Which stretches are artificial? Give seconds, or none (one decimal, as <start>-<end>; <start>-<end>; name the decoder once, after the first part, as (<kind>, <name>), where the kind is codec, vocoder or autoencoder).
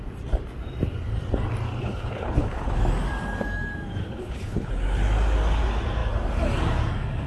1.8-2.8 (codec, HILCodec); 4.0-4.7